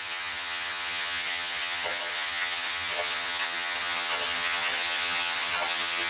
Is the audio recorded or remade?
remade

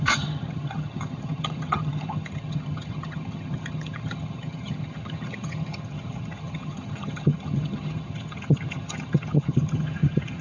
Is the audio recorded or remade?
remade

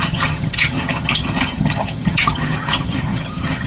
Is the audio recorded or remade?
remade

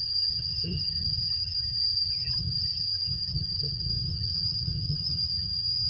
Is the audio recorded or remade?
remade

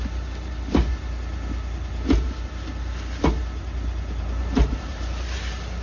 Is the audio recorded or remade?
recorded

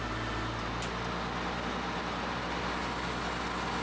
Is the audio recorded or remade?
recorded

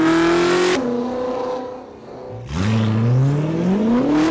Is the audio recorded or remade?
recorded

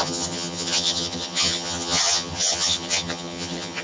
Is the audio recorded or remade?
remade